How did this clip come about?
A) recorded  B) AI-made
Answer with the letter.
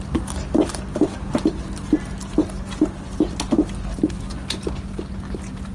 A